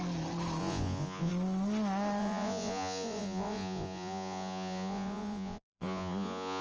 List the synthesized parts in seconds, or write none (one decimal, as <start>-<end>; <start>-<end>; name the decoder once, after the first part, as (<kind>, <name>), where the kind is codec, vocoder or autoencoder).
0.6-1.3 (vocoder, Vocos); 2.2-6.6